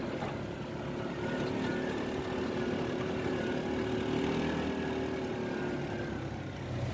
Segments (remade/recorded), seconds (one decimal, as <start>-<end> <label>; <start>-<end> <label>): 0.0-6.9 recorded